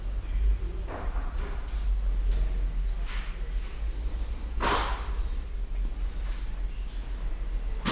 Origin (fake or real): real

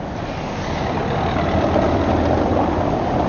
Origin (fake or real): real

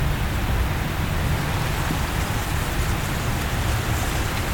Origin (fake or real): fake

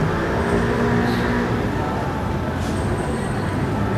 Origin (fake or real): real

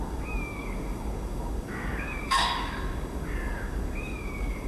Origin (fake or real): fake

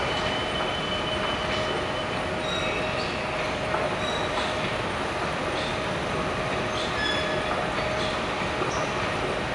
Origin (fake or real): real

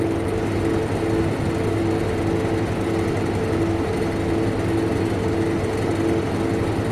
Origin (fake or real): real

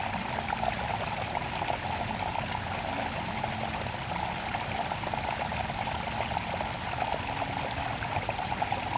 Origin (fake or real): real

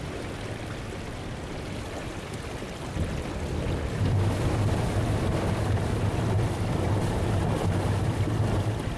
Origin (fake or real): real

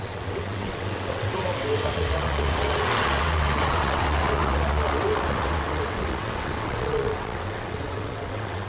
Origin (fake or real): fake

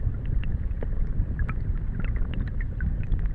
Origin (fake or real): real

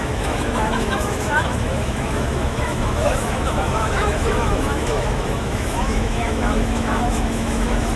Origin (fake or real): fake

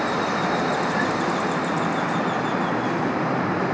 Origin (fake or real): real